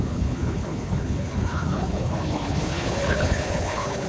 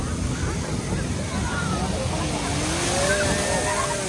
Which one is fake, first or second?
first